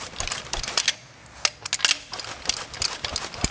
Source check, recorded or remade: recorded